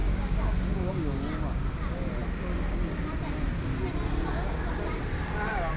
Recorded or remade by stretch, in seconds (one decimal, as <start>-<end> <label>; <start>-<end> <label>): 0.0-0.9 remade; 0.9-5.8 recorded